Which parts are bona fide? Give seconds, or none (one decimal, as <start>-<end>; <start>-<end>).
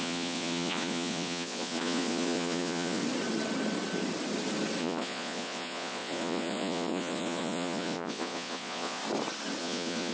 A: 3.0-4.8; 9.0-9.6